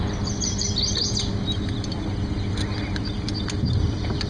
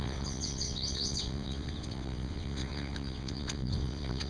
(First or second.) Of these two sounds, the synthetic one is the second